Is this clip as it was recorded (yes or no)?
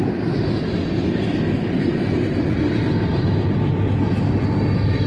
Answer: yes